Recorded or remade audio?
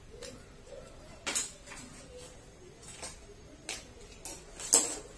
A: recorded